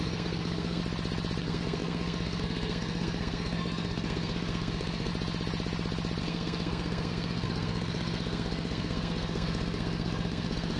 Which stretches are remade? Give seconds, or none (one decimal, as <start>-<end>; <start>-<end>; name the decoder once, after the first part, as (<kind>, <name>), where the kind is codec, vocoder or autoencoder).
0.0-0.8 (codec, SNAC); 1.4-5.1; 6.2-10.8